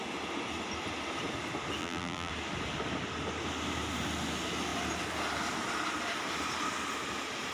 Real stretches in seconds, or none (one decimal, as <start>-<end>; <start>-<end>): 0.0-1.8; 2.3-7.5